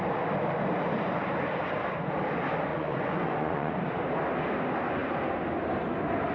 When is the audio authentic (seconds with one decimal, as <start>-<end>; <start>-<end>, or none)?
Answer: 0.0-2.7; 3.8-6.3